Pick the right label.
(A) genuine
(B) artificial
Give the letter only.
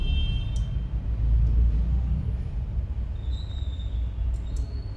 A